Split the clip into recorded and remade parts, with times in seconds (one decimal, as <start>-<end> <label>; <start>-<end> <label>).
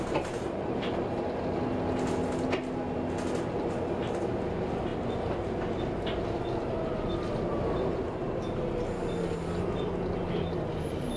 0.0-11.2 recorded